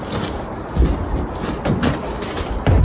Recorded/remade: recorded